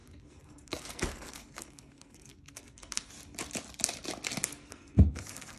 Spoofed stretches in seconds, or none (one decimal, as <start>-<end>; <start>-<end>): 0.0-3.1; 4.5-5.6